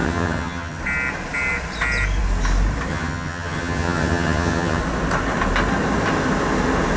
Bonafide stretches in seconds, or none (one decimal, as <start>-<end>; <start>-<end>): 0.8-2.9; 4.8-7.0